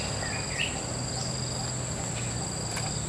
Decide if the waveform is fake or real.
real